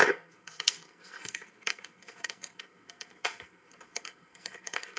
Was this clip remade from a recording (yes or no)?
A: yes